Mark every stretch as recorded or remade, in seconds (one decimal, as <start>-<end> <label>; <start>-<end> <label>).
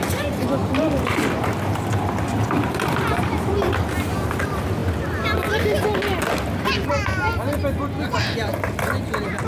0.0-4.8 remade; 4.8-8.1 recorded; 8.1-9.5 remade